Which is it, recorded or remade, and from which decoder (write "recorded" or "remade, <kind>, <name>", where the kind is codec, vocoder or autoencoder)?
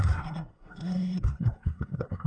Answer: remade, codec, SNAC